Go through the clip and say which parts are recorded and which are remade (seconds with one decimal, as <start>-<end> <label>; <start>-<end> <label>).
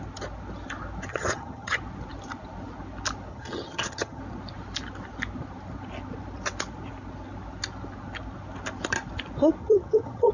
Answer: 0.0-1.1 recorded; 1.1-1.8 remade; 1.8-3.3 recorded; 3.3-4.2 remade; 4.2-9.6 recorded; 9.6-10.3 remade